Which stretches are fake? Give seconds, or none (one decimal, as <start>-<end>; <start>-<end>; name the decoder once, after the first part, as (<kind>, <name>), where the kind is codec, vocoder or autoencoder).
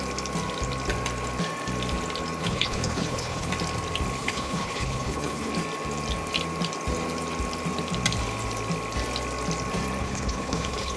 2.4-3.5 (codec, HILCodec); 4.2-5.5; 10.0-11.0